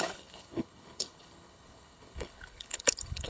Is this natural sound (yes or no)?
no